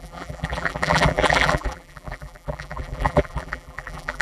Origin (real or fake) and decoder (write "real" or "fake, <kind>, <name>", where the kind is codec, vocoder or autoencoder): fake, vocoder, BigVGAN v2